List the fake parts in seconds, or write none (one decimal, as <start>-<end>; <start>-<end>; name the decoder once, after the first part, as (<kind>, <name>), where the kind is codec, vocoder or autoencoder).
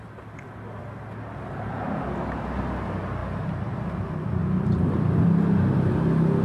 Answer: 4.4-5.2 (vocoder, BigVGAN v2)